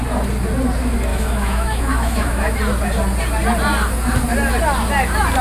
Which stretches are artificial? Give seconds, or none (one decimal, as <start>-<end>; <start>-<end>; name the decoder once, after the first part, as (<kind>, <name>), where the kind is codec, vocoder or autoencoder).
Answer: 1.1-2.6 (autoencoder, DAC-VAE)